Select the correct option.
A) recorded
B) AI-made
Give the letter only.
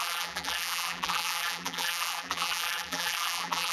B